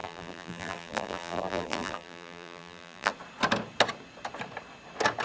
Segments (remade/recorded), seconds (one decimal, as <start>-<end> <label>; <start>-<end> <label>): 0.0-3.1 remade; 3.1-5.2 recorded